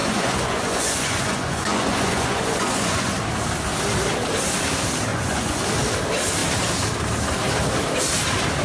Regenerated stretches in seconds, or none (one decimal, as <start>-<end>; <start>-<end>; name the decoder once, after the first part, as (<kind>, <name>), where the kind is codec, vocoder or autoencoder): 0.0-3.1 (vocoder, Vocos); 5.1-5.6